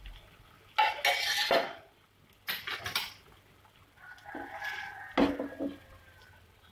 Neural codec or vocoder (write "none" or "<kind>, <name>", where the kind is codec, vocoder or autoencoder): none